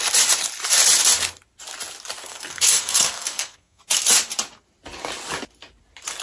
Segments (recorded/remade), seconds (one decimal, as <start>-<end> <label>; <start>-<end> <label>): 0.0-2.2 recorded; 2.2-3.8 remade; 3.8-6.2 recorded